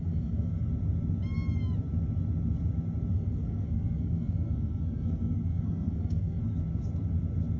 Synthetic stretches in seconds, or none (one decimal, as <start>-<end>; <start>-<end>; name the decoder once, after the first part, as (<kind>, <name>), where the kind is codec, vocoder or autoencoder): 0.0-0.7 (codec, SNAC); 3.1-6.4